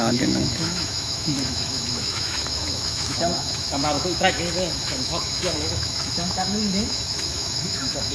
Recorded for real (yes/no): no